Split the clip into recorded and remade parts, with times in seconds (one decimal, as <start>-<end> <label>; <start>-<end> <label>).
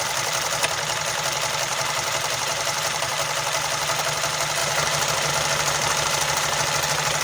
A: 0.0-1.7 recorded; 1.7-3.1 remade; 3.1-4.6 recorded; 4.6-5.3 remade; 5.3-5.8 recorded; 5.8-6.6 remade; 6.6-7.2 recorded